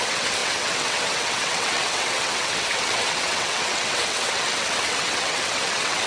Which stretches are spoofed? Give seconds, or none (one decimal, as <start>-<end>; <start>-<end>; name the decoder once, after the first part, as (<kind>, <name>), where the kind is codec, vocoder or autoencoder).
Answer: 0.0-6.1 (vocoder, WaveNeXt)